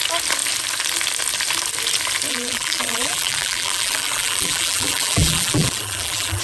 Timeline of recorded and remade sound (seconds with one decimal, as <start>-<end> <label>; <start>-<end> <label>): 0.0-2.3 recorded; 2.3-6.4 remade